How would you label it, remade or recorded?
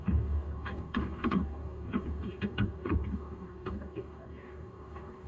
remade